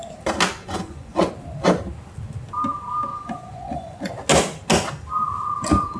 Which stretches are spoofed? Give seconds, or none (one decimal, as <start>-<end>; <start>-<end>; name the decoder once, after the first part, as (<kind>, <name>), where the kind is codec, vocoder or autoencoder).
0.6-1.3 (vocoder, Vocos); 3.1-4.1